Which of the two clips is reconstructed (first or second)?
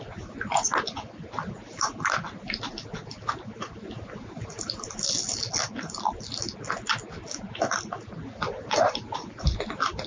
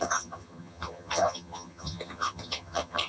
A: second